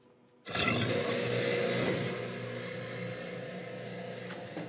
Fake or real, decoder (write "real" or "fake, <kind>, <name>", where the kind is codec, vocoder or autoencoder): real